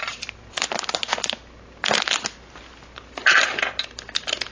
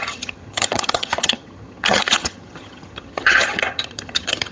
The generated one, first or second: second